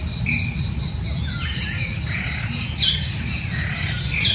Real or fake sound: real